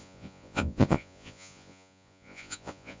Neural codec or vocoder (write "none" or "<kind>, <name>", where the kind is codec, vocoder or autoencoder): vocoder, Vocos